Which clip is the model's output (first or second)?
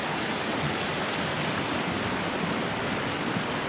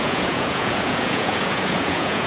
second